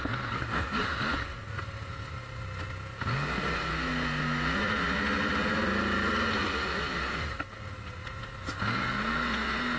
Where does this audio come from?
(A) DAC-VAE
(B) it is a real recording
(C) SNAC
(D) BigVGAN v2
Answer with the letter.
B